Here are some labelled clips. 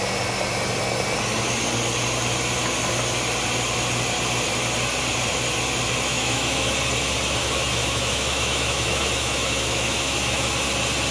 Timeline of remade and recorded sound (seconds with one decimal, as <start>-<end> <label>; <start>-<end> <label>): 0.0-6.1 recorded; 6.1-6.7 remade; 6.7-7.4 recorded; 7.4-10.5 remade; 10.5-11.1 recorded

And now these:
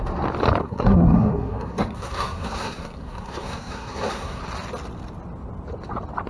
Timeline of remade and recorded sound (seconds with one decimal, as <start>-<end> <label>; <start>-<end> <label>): 0.0-0.6 recorded; 0.6-4.4 remade; 4.4-6.3 recorded

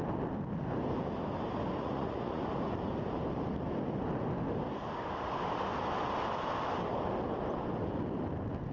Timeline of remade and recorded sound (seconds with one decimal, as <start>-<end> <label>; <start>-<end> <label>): 0.0-1.8 recorded; 1.8-2.4 remade; 2.4-8.7 recorded

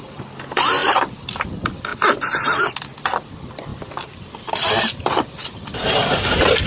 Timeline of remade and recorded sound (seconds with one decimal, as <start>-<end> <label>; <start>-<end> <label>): 0.0-1.9 remade; 1.9-3.0 recorded; 3.0-6.7 remade

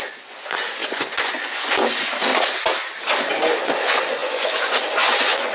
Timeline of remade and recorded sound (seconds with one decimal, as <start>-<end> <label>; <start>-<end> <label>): 0.0-2.3 remade; 2.3-3.6 recorded; 3.6-5.5 remade

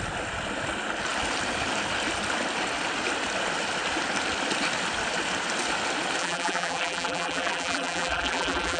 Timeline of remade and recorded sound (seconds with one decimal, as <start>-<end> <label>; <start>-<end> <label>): 0.0-6.2 recorded; 6.2-8.8 remade

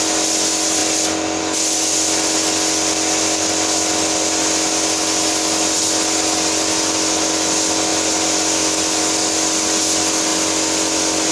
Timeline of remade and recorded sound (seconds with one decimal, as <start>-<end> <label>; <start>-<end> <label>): 0.0-7.9 recorded; 7.9-9.0 remade; 9.0-11.3 recorded